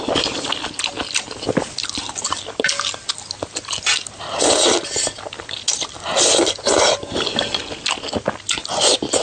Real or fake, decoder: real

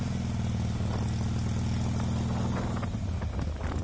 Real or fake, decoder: real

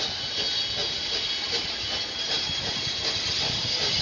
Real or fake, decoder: real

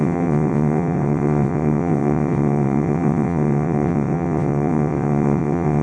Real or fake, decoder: fake, vocoder, WaveNeXt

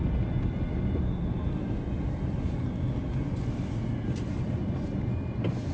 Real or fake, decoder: real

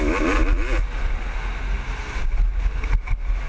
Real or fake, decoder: real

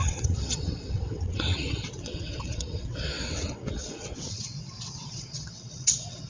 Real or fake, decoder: fake, vocoder, WaveNeXt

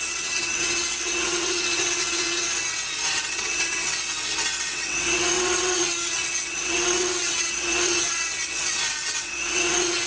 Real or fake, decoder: fake, vocoder, WaveNeXt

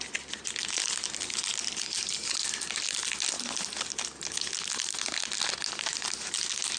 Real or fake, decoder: real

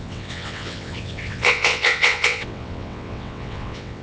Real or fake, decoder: fake, vocoder, WaveNeXt